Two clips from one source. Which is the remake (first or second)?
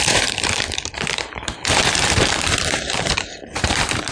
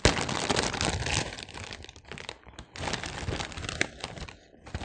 first